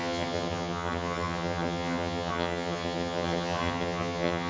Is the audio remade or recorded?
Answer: remade